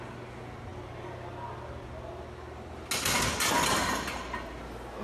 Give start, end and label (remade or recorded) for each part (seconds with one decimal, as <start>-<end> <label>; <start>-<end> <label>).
0.0-5.0 recorded